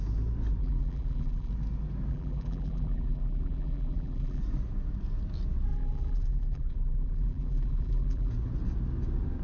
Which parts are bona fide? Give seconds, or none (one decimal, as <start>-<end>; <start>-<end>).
0.0-0.6; 1.5-2.1; 4.4-5.7; 8.3-9.4